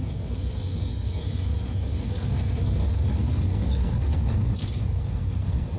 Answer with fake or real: fake